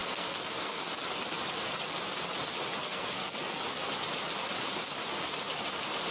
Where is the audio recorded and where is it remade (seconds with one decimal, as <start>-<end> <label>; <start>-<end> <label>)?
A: 0.0-0.9 remade; 0.9-2.8 recorded; 2.8-3.6 remade; 3.6-6.1 recorded